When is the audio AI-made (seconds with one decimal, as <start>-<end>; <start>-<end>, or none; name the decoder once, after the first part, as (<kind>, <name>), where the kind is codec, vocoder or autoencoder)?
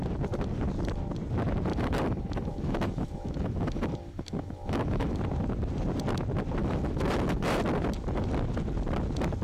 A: 1.7-5.2 (autoencoder, DAC-VAE); 6.6-7.6